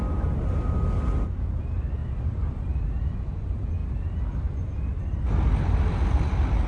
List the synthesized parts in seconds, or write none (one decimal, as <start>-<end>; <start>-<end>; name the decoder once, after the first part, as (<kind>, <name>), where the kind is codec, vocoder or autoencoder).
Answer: none